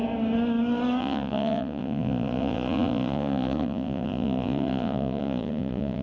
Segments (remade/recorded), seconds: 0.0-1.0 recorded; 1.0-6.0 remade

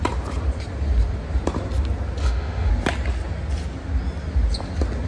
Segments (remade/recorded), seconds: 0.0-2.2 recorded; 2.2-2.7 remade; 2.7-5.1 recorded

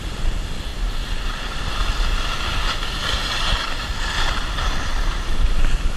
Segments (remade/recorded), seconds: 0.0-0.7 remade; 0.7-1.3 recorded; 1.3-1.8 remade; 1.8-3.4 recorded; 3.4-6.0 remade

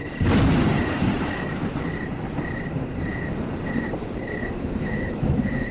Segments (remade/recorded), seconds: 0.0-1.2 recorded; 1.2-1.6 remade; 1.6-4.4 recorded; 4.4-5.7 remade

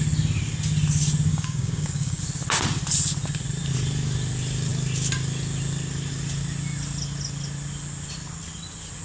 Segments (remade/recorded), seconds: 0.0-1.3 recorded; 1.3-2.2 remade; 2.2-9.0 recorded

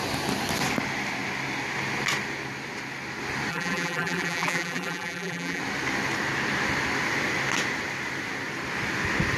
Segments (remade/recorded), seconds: 0.0-3.5 recorded; 3.5-5.6 remade; 5.6-9.4 recorded

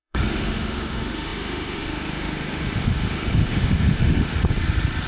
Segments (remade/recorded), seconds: 0.0-4.4 remade; 4.4-5.1 recorded